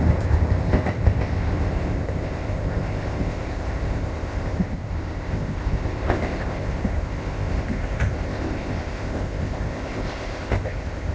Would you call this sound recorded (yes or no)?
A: no